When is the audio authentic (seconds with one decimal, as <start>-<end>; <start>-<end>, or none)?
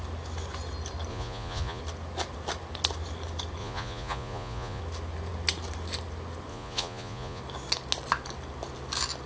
0.0-1.1; 1.8-3.6; 4.8-6.5; 7.4-9.3